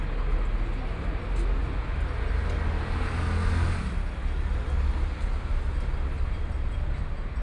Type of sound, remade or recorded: recorded